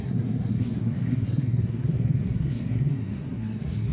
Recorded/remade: remade